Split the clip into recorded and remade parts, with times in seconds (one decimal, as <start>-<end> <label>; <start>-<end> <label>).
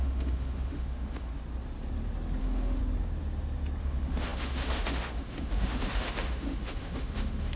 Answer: 0.0-1.3 remade; 1.3-2.4 recorded; 2.4-2.8 remade; 2.8-3.8 recorded; 3.8-7.6 remade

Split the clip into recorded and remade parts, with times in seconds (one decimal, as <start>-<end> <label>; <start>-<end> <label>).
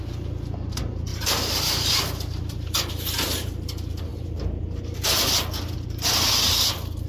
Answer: 0.0-1.1 recorded; 1.1-2.0 remade; 2.0-7.1 recorded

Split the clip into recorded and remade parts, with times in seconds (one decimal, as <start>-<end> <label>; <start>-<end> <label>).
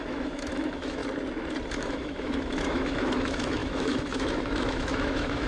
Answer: 0.0-1.0 remade; 1.0-1.7 recorded; 1.7-5.5 remade